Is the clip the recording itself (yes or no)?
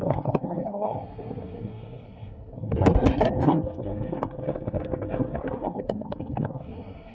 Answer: no